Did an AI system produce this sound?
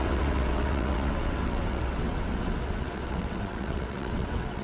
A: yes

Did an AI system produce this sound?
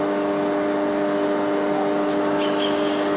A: no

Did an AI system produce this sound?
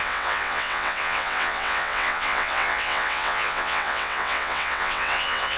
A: yes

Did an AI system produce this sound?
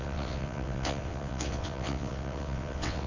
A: yes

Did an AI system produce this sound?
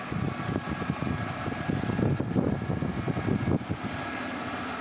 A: no